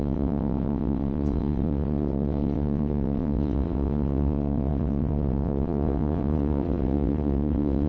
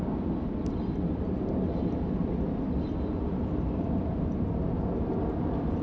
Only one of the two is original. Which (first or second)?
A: second